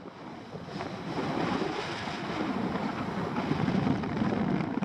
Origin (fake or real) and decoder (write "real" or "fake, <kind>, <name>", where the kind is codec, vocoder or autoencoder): real